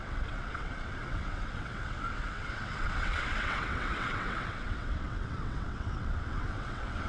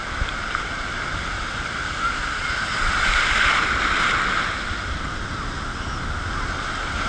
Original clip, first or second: second